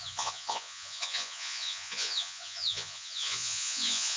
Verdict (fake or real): fake